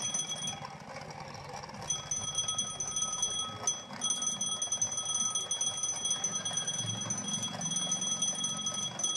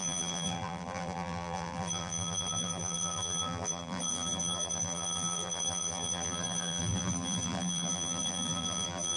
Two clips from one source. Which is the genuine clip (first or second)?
first